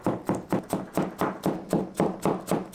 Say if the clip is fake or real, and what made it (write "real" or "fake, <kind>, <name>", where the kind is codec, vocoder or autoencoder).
real